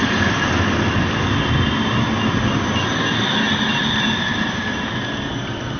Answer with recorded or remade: recorded